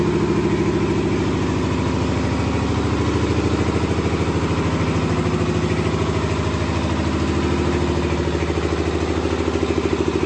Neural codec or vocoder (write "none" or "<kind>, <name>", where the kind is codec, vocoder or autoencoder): none